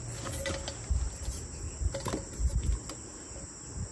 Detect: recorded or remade recorded